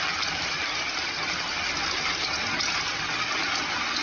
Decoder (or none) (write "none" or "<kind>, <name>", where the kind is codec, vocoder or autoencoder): none